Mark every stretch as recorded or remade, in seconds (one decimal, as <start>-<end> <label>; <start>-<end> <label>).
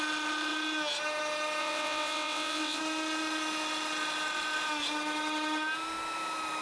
0.0-1.6 recorded; 1.6-2.8 remade; 2.8-6.6 recorded